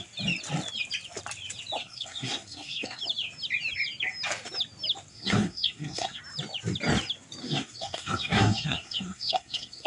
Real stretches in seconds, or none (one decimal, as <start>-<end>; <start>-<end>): 0.0-1.8; 3.0-5.1; 6.2-7.4